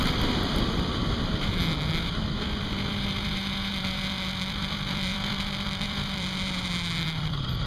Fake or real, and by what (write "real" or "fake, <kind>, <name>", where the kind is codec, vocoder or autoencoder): fake, vocoder, BigVGAN v2